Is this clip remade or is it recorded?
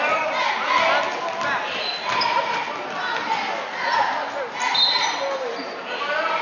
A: recorded